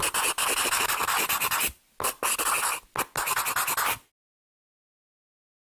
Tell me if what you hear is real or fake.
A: real